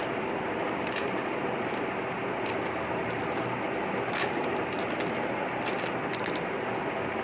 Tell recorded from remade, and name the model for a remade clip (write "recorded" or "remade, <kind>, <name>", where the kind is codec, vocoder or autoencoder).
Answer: recorded